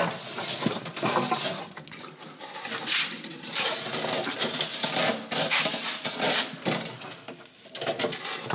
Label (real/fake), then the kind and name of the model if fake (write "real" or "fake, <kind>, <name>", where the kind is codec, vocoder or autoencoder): real